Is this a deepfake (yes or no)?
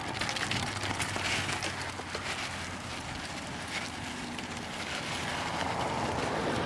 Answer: no